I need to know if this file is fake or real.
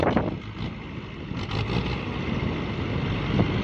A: real